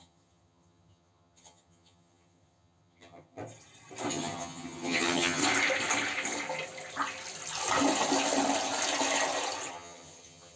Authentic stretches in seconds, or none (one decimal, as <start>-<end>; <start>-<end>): 3.4-4.1; 5.4-9.7